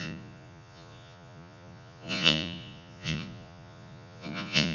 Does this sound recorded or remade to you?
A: remade